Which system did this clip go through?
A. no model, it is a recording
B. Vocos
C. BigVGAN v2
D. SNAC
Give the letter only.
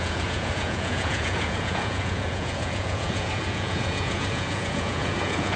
B